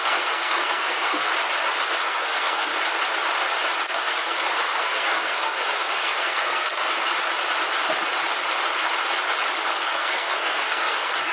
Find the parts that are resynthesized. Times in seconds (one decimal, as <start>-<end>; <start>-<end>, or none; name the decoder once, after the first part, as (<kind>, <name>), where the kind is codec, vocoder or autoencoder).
0.0-1.3 (codec, SNAC); 2.0-2.7; 3.8-6.8; 9.7-11.3